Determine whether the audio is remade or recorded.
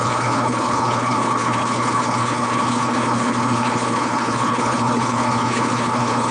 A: remade